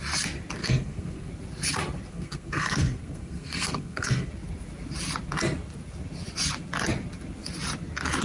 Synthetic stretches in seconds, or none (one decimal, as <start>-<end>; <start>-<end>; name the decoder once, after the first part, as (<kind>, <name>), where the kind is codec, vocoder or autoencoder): 0.6-1.3 (codec, SNAC); 2.1-4.3